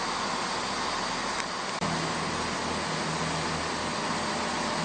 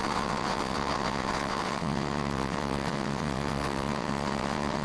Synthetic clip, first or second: second